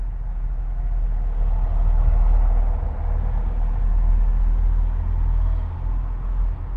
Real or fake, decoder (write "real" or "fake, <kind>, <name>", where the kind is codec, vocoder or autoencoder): real